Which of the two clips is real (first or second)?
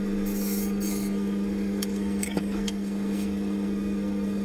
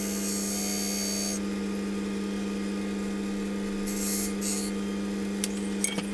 second